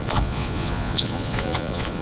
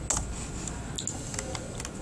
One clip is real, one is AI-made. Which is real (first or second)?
second